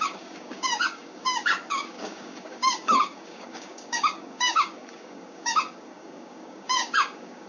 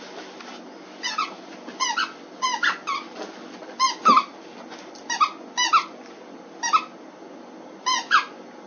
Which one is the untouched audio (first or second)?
second